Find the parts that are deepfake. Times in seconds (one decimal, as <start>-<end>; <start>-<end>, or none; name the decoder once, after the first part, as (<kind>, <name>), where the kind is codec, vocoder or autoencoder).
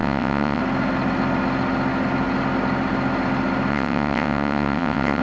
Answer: 0.0-0.6 (vocoder, WaveNeXt); 3.7-5.2